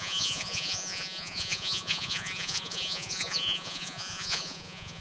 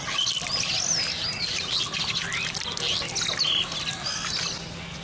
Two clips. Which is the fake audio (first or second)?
first